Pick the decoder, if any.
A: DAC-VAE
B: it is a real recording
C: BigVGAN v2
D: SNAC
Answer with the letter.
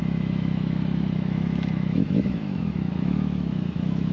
A